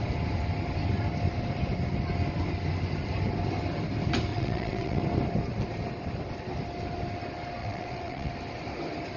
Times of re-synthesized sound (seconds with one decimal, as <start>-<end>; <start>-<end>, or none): 4.3-5.0; 7.6-8.3